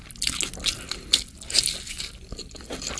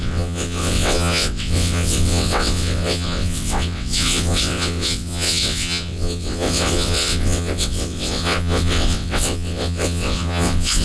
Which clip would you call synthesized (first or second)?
second